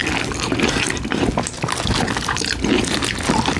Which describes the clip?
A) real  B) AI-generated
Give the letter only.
A